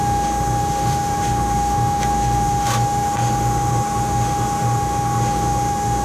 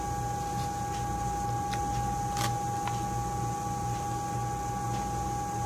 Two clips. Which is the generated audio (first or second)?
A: first